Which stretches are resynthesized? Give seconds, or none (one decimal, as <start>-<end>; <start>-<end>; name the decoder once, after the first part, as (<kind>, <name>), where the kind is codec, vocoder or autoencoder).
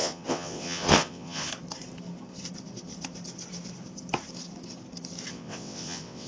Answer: 0.0-1.5 (vocoder, WaveNeXt); 5.3-6.3